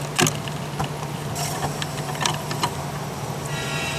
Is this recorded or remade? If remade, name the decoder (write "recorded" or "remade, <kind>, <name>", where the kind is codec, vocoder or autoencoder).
recorded